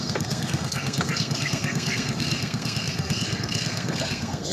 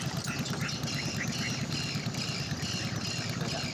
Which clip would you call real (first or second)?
second